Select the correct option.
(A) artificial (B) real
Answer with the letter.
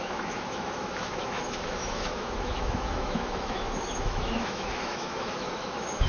A